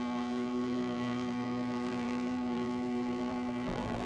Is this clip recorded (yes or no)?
no